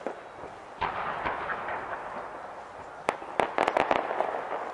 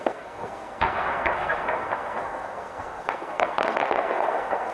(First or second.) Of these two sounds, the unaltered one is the first